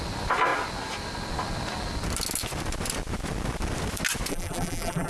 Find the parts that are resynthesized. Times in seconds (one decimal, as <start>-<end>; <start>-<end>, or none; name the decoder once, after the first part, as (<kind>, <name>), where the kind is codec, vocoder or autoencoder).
4.3-5.1 (vocoder, BigVGAN v2)

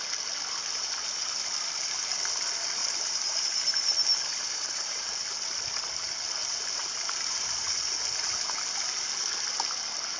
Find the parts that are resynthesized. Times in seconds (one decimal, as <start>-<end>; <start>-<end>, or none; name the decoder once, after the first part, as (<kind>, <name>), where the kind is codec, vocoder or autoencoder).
2.8-3.7 (vocoder, BigVGAN v2); 4.3-5.1; 6.4-8.5

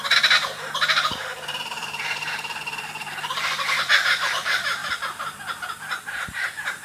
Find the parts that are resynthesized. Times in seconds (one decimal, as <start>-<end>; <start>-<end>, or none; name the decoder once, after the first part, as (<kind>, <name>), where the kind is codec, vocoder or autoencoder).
0.0-4.8 (vocoder, BigVGAN v2); 6.0-6.8

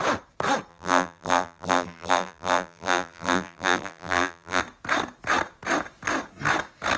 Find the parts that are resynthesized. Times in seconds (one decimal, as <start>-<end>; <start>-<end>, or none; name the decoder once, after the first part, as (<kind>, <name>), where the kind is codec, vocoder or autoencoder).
0.7-4.6 (vocoder, BigVGAN v2)

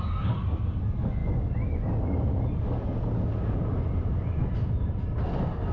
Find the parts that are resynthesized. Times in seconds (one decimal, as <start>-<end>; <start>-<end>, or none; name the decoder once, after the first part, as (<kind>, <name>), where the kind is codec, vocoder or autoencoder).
none

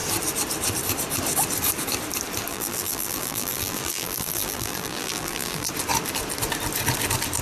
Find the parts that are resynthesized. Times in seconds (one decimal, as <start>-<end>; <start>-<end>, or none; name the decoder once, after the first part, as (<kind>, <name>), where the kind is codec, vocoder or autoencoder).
2.5-5.7 (vocoder, BigVGAN v2)

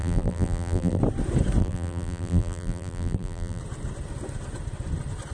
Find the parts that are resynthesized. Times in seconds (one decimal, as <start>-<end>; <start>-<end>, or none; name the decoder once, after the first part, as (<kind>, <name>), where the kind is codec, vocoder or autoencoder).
0.0-1.0 (vocoder, BigVGAN v2); 1.6-3.6

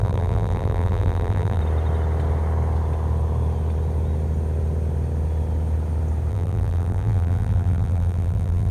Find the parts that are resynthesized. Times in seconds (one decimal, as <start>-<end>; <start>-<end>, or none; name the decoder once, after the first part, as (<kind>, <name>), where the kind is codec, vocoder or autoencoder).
0.0-1.6 (vocoder, BigVGAN v2); 6.3-8.7